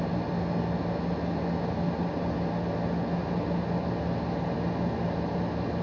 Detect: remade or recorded recorded